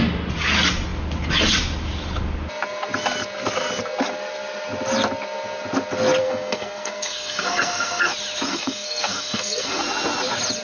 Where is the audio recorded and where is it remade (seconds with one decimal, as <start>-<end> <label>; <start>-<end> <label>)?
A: 0.0-6.2 recorded; 6.2-8.1 remade; 8.1-8.5 recorded; 8.5-9.8 remade; 9.8-10.6 recorded